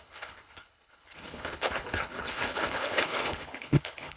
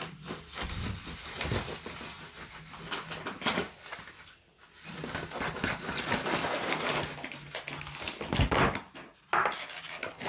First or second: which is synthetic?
first